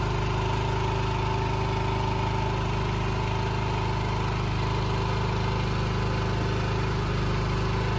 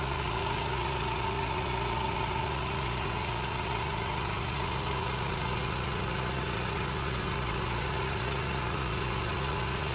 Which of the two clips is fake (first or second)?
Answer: second